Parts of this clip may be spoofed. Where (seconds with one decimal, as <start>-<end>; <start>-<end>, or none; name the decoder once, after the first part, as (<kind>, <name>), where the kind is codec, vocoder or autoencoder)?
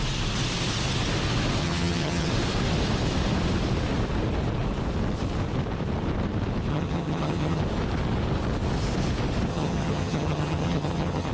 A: 1.6-2.3 (vocoder, HiFi-GAN); 6.7-7.6; 9.5-11.3